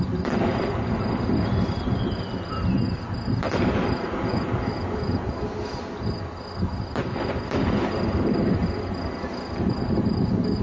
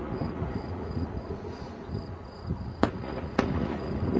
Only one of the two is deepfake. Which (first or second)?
second